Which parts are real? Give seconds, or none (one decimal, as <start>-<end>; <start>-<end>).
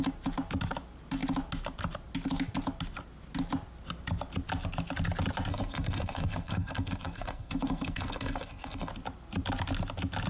0.0-5.5; 8.9-10.3